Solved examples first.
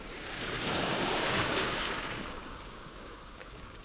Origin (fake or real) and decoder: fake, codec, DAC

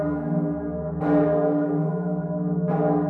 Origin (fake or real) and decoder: fake, codec, DAC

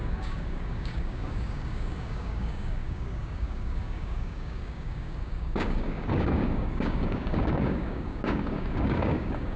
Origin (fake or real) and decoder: fake, codec, DAC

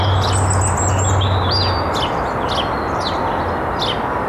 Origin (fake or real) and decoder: real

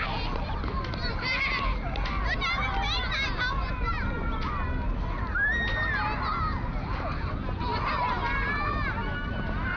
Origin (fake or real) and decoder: real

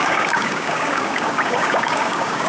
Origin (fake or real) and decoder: fake, codec, DAC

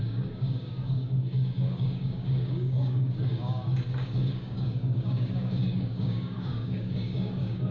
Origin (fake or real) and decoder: fake, codec, DAC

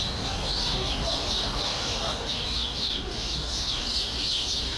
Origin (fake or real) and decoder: fake, codec, DAC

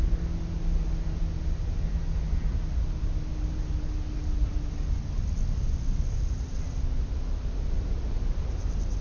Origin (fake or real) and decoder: real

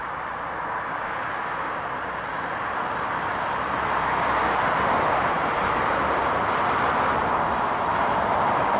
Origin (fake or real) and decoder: real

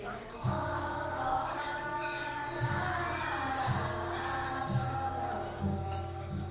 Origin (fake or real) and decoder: fake, codec, DAC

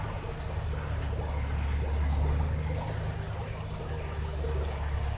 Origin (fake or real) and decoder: real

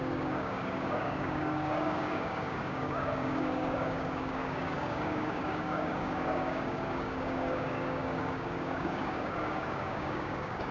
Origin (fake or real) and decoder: fake, codec, DAC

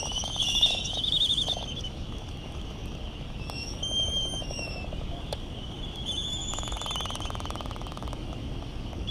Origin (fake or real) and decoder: fake, codec, DAC